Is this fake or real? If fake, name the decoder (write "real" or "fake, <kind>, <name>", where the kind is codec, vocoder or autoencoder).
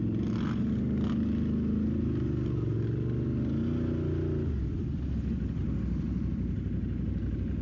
real